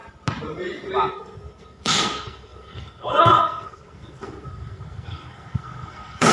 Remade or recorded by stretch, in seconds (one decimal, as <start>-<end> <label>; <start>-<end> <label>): 0.0-1.1 recorded; 1.1-6.3 remade